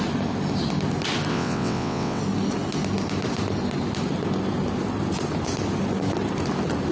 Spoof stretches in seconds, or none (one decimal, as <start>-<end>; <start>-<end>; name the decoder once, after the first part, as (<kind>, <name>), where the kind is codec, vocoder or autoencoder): 1.3-2.2 (vocoder, WaveNeXt)